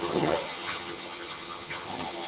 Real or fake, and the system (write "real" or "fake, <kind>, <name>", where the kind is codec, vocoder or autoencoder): fake, vocoder, HiFi-GAN